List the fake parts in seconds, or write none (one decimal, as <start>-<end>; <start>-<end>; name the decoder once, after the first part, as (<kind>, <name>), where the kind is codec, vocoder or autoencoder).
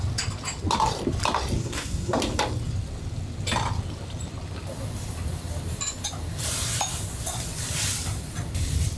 1.6-2.2 (codec, SNAC)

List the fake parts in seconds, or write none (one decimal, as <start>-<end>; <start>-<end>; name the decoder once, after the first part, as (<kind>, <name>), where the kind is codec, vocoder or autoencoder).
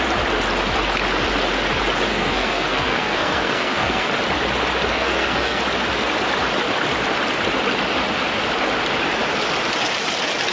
2.1-4.1 (codec, SNAC); 4.9-5.6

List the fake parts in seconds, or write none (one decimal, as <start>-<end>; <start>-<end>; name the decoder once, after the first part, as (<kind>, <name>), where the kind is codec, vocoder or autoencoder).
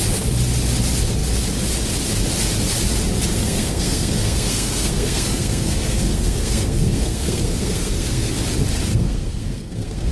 3.3-8.3 (codec, SNAC); 8.9-10.1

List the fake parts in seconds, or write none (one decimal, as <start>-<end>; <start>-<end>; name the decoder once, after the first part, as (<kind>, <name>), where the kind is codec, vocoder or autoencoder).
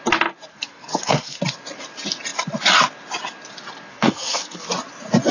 0.5-1.4 (codec, SNAC); 3.9-4.7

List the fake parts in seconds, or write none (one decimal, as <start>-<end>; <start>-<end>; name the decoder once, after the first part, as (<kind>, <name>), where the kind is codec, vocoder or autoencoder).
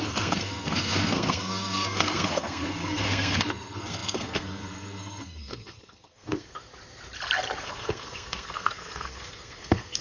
0.0-6.7 (codec, SNAC); 7.6-10.0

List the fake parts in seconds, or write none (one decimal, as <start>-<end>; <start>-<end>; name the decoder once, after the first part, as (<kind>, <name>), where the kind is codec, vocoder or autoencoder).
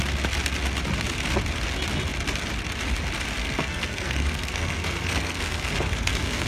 3.4-6.5 (codec, SNAC)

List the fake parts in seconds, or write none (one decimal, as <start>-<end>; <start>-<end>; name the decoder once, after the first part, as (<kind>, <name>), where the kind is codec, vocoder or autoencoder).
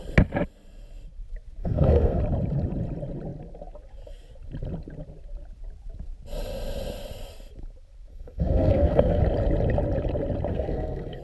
1.6-2.2 (codec, SNAC); 8.1-9.2; 10.5-11.2